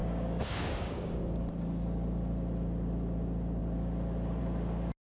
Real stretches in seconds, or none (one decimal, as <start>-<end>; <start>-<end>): 1.2-5.0